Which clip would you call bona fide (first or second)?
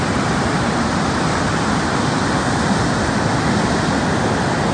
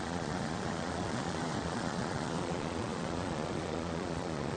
first